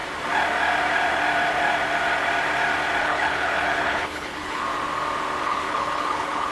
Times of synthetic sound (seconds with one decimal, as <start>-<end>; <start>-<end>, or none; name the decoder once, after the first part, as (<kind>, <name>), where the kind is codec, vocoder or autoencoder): 3.0-4.6 (codec, HILCodec); 5.4-6.5